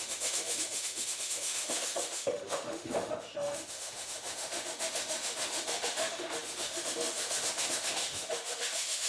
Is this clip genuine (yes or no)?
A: no